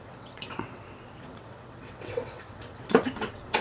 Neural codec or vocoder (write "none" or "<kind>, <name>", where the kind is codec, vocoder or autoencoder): vocoder, WaveNeXt